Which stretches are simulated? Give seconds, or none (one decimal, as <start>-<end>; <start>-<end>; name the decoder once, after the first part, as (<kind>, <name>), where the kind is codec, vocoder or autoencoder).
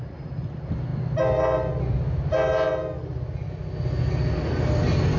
none